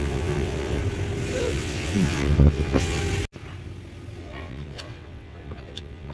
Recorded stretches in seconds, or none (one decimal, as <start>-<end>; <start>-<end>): 0.8-1.4; 3.0-4.2